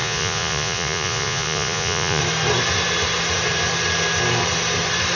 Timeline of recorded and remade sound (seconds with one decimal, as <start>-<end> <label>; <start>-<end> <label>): 0.0-2.2 remade; 2.2-5.2 recorded